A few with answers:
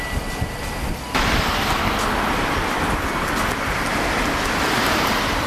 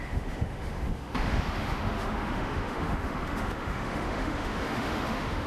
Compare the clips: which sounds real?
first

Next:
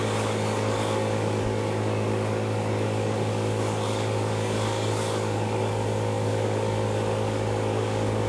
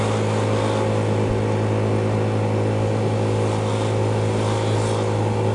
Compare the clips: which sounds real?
second